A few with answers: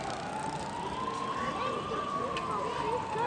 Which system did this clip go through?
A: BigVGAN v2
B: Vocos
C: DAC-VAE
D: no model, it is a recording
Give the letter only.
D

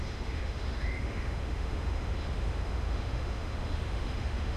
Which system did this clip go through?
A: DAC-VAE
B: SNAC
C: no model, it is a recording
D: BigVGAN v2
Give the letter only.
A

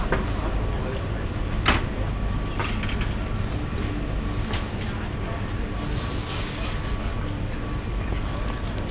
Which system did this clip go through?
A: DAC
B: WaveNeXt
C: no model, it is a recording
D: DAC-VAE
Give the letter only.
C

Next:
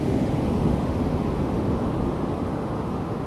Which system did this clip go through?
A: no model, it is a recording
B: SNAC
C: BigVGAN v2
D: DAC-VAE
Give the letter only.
D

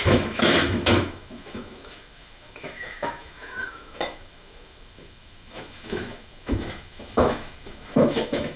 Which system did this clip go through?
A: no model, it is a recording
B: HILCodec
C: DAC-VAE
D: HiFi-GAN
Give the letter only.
C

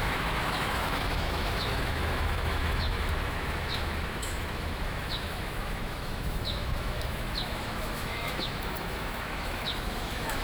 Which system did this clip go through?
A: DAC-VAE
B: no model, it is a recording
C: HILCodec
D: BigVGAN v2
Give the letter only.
A